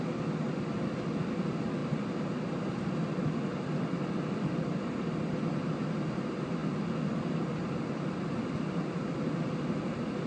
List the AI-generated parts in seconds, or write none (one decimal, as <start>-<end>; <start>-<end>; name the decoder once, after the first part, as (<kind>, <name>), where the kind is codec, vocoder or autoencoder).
none